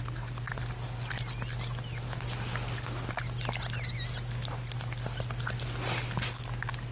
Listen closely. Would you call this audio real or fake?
real